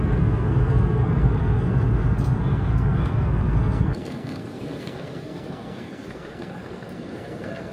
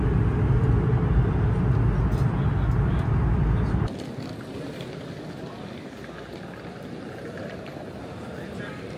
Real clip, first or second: second